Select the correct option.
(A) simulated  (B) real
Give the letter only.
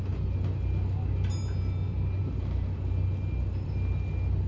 B